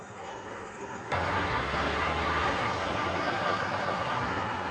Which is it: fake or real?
fake